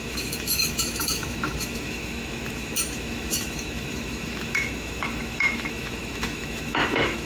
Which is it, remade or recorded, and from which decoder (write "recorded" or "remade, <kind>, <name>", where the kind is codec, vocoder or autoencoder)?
remade, autoencoder, DAC-VAE